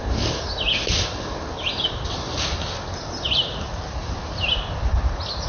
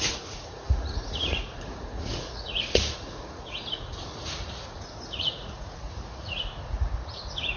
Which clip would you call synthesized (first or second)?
second